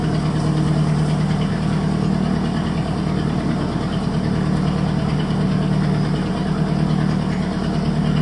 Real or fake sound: real